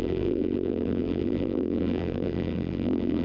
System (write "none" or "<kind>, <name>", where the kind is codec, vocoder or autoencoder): vocoder, BigVGAN v2